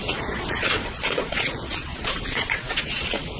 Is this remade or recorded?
remade